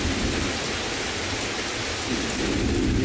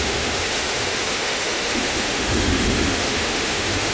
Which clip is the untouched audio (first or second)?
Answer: first